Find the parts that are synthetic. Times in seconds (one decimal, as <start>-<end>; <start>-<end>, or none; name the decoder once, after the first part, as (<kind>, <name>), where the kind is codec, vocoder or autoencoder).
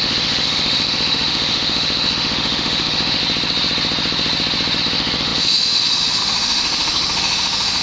0.0-3.2 (autoencoder, DAC-VAE); 4.8-7.8